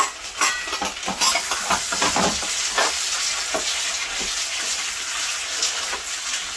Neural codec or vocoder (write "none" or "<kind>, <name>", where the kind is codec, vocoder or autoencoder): vocoder, BigVGAN v2